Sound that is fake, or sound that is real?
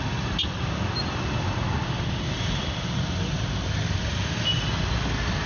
real